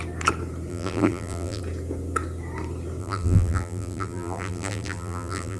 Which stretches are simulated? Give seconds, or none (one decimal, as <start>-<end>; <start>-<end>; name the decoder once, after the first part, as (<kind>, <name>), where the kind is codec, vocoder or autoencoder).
0.7-1.6 (vocoder, BigVGAN v2); 3.0-5.6